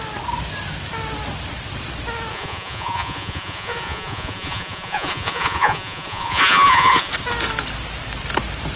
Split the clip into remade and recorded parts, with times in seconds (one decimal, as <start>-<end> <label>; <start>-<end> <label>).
0.0-2.3 recorded; 2.3-7.1 remade; 7.1-8.8 recorded